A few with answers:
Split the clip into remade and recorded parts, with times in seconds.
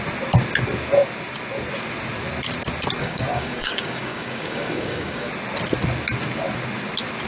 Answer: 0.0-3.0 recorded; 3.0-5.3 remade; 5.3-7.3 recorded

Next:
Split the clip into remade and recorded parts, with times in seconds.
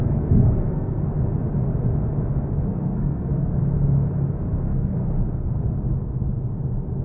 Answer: 0.0-1.1 remade; 1.1-2.7 recorded; 2.7-3.6 remade; 3.6-4.5 recorded; 4.5-5.2 remade; 5.2-7.0 recorded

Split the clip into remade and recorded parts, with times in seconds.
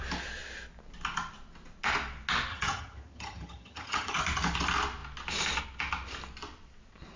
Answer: 0.0-2.5 recorded; 2.5-4.2 remade; 4.2-7.2 recorded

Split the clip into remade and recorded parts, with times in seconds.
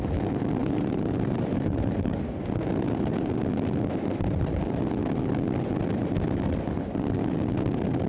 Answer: 0.0-0.6 recorded; 0.6-3.4 remade; 3.4-8.1 recorded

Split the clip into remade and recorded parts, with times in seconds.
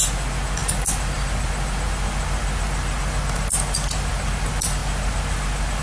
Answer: 0.0-5.8 recorded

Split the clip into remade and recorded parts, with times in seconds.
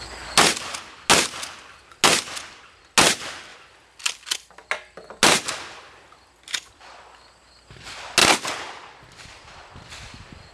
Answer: 0.0-10.5 recorded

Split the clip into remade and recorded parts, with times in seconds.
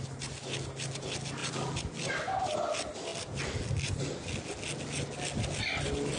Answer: 0.0-6.2 recorded